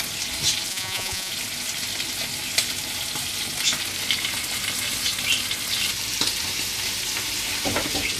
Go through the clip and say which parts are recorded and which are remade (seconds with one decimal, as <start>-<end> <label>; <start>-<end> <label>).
0.0-0.7 recorded; 0.7-1.3 remade; 1.3-8.2 recorded